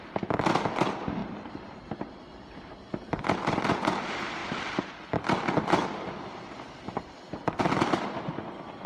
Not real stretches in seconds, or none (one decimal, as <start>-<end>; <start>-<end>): none